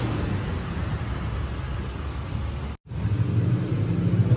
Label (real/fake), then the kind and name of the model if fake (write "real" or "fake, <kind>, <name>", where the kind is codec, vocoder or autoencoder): real